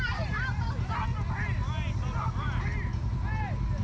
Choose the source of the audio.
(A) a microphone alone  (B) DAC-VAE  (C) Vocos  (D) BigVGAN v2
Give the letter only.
A